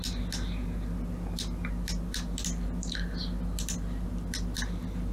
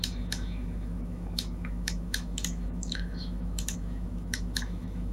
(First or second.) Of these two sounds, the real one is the first